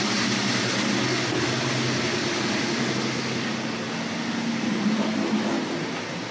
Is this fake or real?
real